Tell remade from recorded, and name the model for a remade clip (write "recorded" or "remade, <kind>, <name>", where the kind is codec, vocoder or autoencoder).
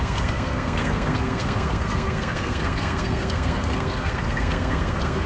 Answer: remade, codec, SNAC